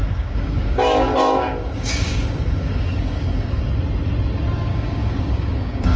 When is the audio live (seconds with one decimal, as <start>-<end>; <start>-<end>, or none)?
3.6-4.7